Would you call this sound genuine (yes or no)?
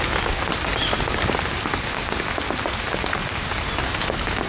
yes